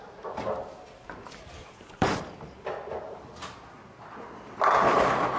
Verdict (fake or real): real